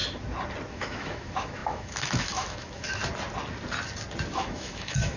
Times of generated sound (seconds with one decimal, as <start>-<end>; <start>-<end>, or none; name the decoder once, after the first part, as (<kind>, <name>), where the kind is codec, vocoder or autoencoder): 0.7-3.0 (autoencoder, DAC-VAE); 4.3-5.2